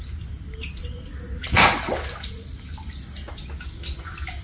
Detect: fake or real real